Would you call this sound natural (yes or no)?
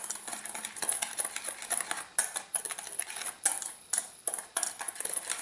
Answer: yes